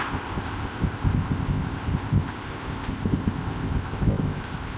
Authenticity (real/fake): fake